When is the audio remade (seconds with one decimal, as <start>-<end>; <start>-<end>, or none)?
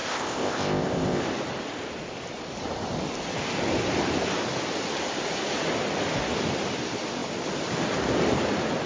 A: 0.0-1.2